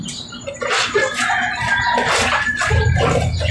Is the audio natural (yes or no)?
yes